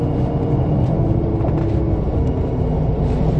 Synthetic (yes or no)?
no